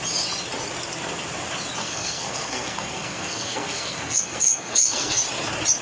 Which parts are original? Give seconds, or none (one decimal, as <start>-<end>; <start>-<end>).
0.0-1.8; 5.2-5.8